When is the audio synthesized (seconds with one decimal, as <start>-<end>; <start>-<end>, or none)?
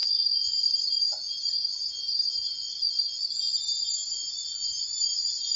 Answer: none